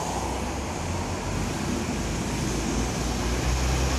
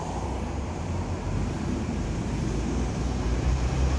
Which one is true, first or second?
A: first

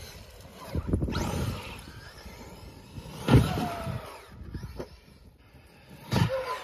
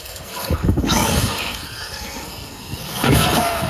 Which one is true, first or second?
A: first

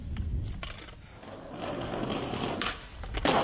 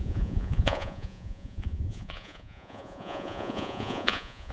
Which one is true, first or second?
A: first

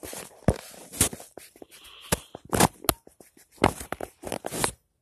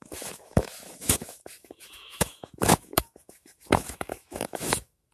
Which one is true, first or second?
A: first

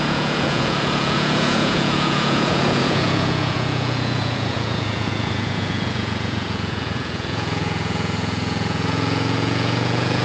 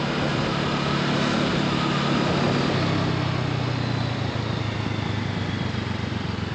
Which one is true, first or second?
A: second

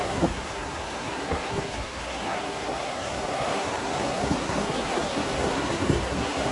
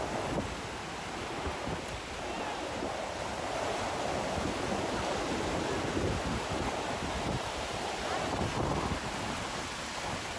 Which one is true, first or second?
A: second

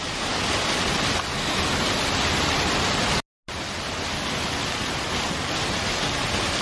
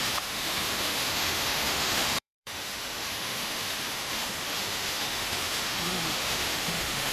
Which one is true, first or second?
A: first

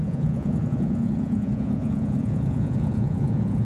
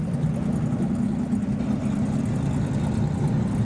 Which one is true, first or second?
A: second